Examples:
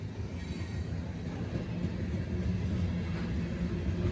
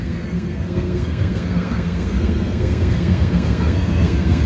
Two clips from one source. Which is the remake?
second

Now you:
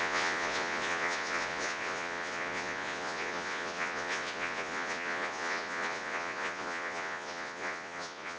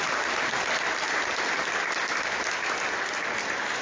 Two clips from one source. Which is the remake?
first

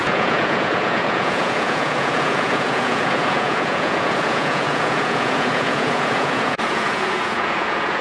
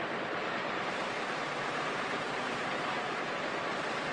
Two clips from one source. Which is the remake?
first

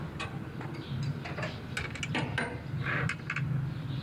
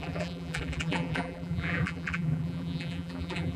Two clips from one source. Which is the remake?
second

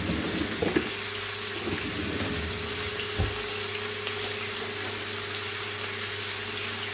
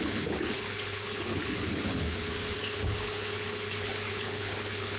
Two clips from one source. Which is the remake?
second